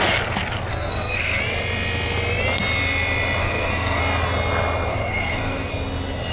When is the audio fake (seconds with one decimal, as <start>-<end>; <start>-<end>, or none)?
0.7-1.4; 3.4-4.0; 4.9-5.7